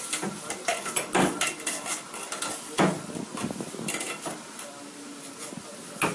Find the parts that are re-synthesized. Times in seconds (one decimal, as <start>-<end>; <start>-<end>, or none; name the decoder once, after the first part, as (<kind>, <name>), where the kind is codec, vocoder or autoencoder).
none